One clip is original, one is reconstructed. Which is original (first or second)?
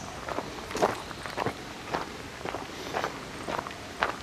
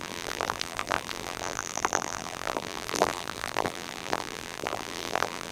first